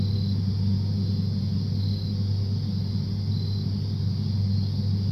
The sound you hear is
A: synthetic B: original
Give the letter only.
B